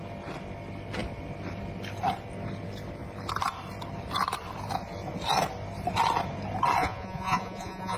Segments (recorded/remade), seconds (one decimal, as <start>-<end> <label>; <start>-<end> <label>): 0.0-6.8 recorded; 6.8-8.0 remade

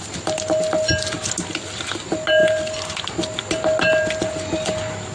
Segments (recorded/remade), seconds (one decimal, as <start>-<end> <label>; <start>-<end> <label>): 0.0-5.1 recorded

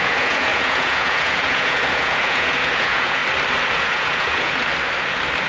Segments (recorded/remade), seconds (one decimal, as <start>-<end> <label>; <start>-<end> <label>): 0.0-3.2 remade; 3.2-3.7 recorded; 3.7-4.7 remade; 4.7-5.5 recorded